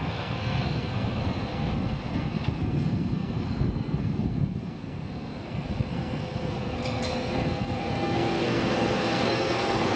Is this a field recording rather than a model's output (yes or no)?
no